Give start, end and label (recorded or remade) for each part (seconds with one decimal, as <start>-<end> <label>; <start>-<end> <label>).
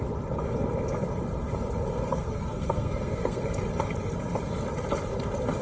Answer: 0.0-2.1 recorded; 2.1-3.4 remade; 3.4-5.6 recorded